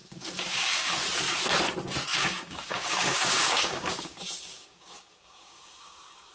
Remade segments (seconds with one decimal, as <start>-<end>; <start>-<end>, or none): 0.0-0.9; 2.1-6.3